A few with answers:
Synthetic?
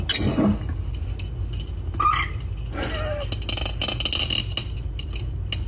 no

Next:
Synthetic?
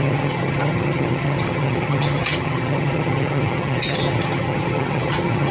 yes